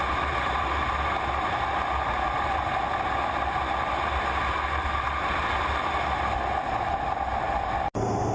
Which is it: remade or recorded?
recorded